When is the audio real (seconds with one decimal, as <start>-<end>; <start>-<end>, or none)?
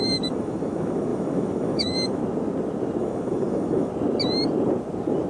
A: 2.2-3.0; 3.9-5.3